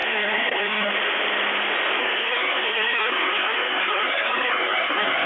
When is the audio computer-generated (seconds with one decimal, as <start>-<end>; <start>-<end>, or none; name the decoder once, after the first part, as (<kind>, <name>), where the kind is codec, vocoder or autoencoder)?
0.0-0.9 (codec, SNAC); 2.0-5.3